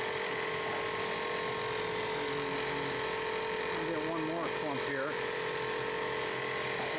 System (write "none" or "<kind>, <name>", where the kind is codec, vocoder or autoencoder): none